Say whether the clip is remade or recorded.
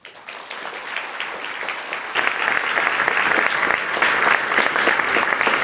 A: recorded